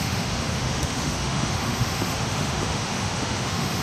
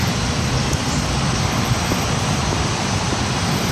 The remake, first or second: first